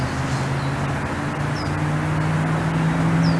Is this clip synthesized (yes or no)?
no